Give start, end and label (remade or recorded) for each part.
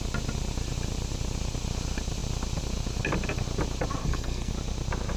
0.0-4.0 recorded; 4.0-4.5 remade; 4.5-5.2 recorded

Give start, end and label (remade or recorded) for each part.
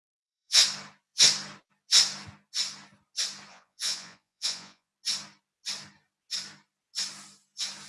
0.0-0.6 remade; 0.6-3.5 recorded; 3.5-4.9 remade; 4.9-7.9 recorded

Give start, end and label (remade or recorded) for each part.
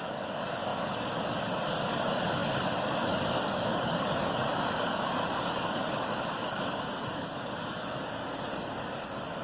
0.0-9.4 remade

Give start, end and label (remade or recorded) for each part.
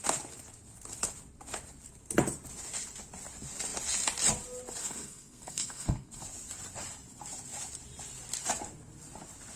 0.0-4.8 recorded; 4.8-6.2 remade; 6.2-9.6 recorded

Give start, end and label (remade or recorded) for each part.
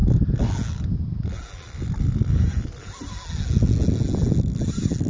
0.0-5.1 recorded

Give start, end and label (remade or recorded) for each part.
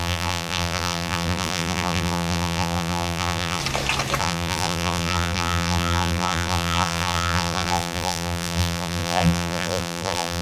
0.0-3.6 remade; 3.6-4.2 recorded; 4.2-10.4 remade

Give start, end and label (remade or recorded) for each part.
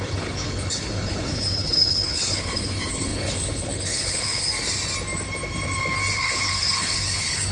0.0-4.5 remade; 4.5-6.1 recorded; 6.1-7.5 remade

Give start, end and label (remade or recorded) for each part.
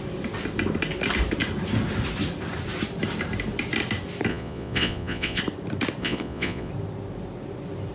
0.0-4.3 recorded; 4.3-5.4 remade; 5.4-6.0 recorded; 6.0-6.7 remade; 6.7-7.9 recorded